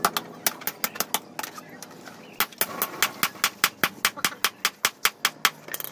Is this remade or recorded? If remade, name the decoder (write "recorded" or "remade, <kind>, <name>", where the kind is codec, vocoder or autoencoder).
recorded